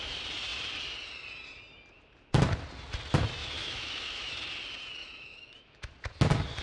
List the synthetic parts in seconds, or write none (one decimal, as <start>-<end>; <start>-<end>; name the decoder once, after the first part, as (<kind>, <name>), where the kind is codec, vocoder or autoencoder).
3.4-4.3 (autoencoder, DAC-VAE); 5.0-5.9